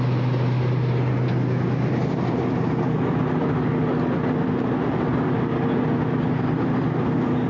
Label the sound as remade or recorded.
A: recorded